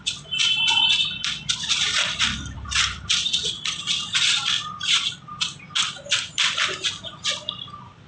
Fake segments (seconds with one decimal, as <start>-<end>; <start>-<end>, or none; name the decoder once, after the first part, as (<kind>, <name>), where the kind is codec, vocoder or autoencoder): 0.0-0.4 (vocoder, BigVGAN v2); 1.6-3.4; 6.0-8.1